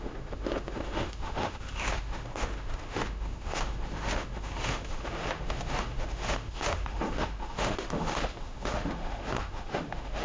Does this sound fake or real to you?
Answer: fake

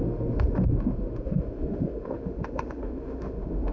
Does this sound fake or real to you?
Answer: fake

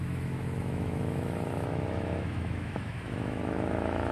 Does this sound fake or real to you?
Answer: fake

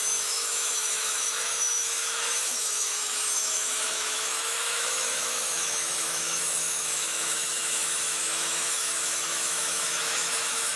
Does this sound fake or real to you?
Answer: fake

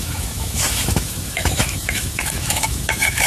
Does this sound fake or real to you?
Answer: fake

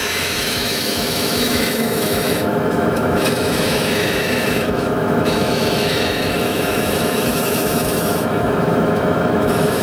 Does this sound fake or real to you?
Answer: fake